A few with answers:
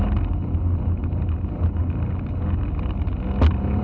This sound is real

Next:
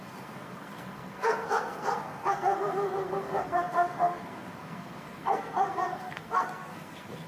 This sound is fake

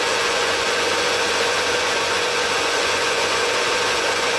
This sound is fake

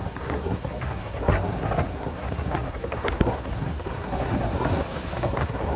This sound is fake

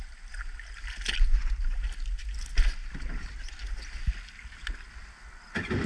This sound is real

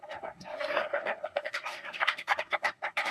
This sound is fake